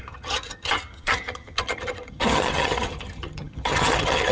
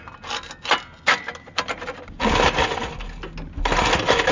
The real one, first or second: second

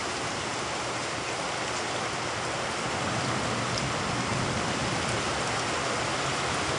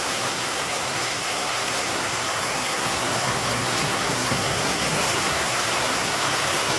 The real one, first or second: first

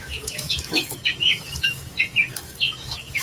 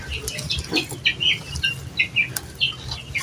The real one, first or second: second